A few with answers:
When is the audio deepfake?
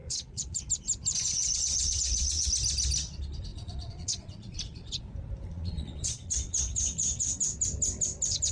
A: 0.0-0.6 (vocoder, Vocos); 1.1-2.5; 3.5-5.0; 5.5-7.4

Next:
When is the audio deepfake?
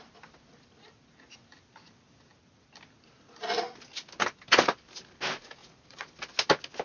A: 5.6-6.1 (vocoder, Vocos)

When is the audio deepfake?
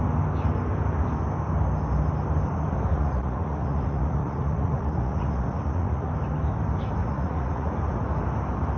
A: 2.9-6.1 (vocoder, Vocos); 7.0-7.7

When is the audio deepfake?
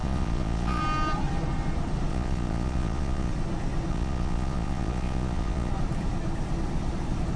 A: 0.0-0.8 (vocoder, Vocos); 2.1-3.3; 3.9-5.7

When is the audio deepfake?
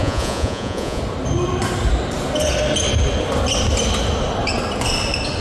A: 0.0-1.0 (vocoder, Vocos)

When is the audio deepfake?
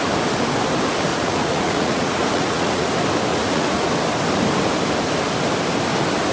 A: 1.1-2.9 (vocoder, Vocos); 3.3-3.9